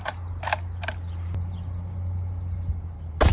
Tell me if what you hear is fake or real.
real